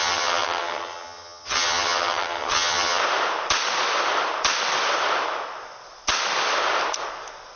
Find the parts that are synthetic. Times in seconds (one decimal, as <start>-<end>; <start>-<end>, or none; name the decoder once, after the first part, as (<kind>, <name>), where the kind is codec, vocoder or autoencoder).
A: 0.0-3.0 (vocoder, HiFi-GAN)